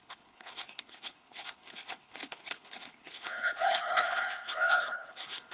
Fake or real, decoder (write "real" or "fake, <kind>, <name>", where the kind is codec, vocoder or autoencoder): fake, codec, HILCodec